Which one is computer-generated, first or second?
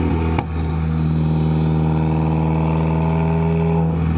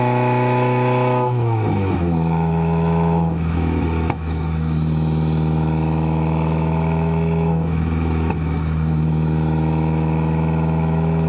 second